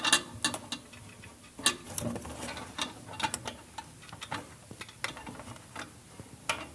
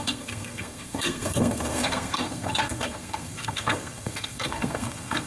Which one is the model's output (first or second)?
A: second